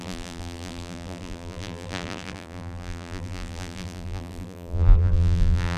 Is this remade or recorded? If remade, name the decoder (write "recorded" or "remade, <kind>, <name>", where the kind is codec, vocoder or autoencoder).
remade, vocoder, BigVGAN v2